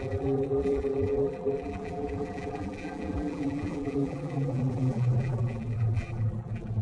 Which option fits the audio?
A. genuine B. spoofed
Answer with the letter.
B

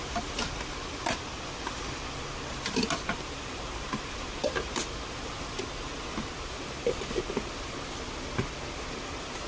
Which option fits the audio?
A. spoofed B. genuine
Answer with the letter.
B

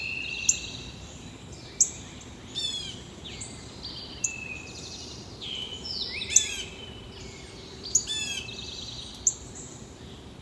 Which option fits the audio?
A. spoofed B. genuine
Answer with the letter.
A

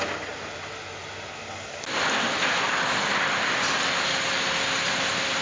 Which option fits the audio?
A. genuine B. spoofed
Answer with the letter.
A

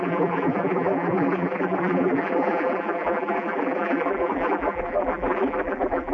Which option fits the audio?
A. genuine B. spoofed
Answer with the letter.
B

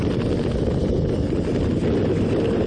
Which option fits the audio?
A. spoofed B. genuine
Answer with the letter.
B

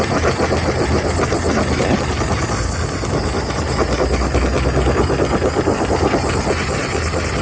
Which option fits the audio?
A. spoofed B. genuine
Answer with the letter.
B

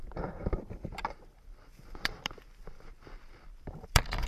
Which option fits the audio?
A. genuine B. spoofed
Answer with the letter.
B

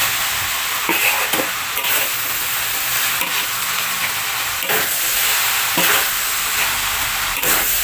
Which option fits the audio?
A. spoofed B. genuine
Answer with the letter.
B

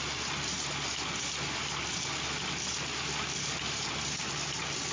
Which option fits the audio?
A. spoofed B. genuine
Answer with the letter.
B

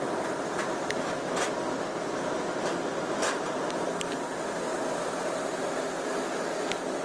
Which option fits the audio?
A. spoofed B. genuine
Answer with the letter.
B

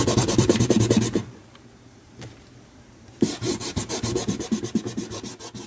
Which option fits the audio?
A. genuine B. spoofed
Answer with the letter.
B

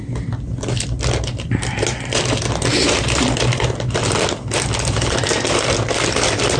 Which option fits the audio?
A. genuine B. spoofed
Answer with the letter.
A